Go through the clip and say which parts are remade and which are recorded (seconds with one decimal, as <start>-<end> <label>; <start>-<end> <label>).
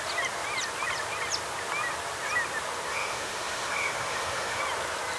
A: 0.0-2.9 recorded; 2.9-4.6 remade; 4.6-5.2 recorded